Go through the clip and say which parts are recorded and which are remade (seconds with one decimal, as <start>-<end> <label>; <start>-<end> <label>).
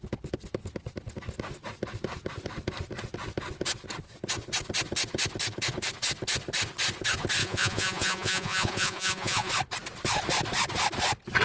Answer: 0.0-7.4 recorded; 7.4-9.5 remade; 9.5-11.4 recorded